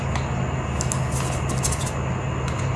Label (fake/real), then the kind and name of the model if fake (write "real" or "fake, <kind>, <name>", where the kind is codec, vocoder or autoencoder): real